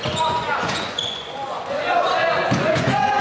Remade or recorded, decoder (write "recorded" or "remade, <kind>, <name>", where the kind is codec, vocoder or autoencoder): remade, vocoder, Vocos